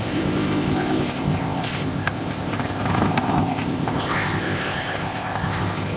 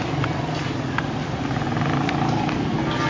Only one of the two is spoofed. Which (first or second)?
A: first